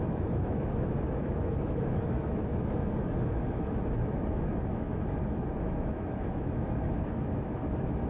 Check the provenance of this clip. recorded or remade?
remade